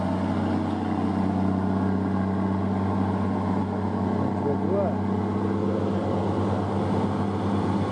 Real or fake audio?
real